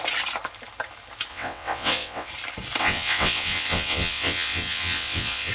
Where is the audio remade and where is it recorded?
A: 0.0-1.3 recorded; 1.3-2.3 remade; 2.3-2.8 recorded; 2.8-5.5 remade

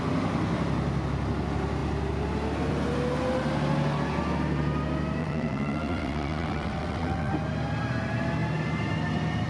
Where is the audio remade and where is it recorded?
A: 0.0-5.2 recorded; 5.2-7.3 remade; 7.3-9.5 recorded